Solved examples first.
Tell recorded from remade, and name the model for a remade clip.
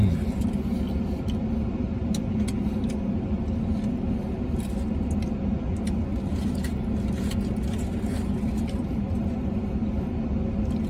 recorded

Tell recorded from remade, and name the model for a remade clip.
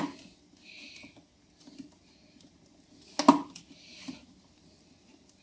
recorded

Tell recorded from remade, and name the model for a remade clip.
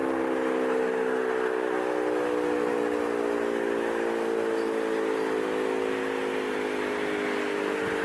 recorded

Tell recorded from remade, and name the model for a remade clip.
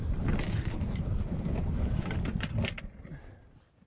recorded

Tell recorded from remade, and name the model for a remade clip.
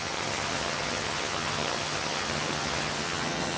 remade, vocoder, HiFi-GAN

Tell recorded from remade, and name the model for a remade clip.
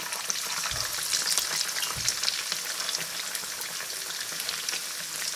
recorded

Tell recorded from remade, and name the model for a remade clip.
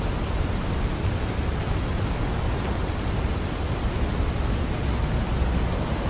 recorded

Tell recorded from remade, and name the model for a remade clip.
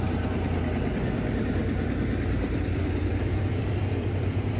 recorded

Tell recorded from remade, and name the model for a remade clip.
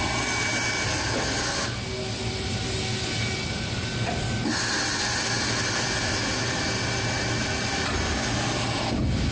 recorded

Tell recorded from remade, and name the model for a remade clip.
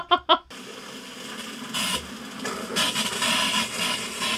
recorded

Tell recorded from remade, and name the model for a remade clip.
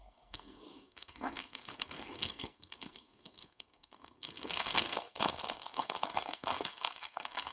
remade, codec, SNAC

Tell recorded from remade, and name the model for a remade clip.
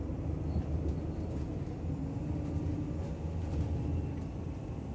recorded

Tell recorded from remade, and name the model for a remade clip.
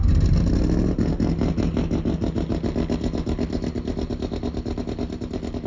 recorded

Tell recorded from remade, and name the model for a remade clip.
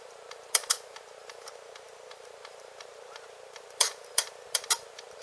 remade, vocoder, BigVGAN v2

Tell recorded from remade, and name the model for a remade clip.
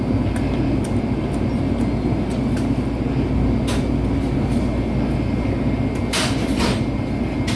recorded